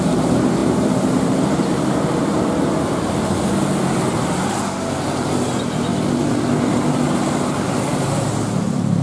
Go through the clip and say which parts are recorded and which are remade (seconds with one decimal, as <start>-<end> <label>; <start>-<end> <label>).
0.0-9.0 recorded